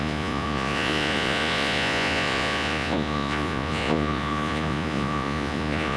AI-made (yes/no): yes